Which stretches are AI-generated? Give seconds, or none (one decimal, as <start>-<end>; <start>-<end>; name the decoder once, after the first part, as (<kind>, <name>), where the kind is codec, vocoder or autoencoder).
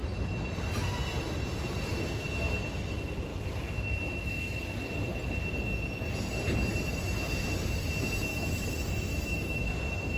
3.3-3.9 (autoencoder, DAC-VAE); 8.3-9.7